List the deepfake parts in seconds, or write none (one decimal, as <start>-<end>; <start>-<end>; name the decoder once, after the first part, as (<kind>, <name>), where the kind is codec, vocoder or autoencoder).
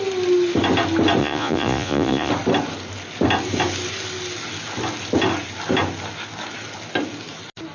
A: 1.2-2.3 (vocoder, Vocos)